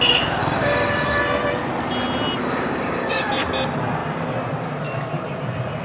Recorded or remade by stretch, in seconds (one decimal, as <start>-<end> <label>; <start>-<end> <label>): 0.0-0.4 recorded; 0.4-1.2 remade; 1.2-2.4 recorded; 2.4-3.3 remade; 3.3-5.8 recorded